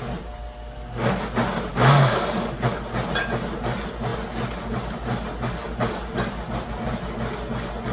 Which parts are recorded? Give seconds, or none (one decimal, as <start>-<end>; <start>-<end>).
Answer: 0.0-0.6; 1.2-1.7; 2.7-7.9